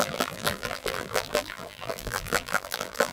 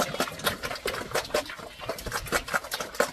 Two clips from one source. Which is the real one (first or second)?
second